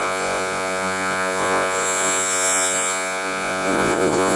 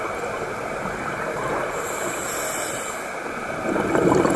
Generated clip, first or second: first